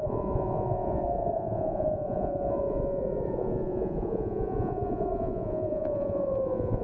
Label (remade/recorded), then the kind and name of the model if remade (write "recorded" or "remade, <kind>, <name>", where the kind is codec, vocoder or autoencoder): remade, vocoder, Vocos